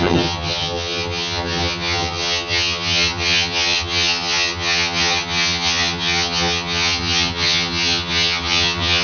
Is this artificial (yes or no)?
yes